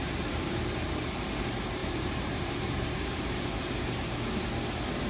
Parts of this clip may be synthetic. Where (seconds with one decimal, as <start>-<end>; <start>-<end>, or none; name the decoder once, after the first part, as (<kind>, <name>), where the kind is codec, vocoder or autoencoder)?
1.8-4.4 (vocoder, BigVGAN v2)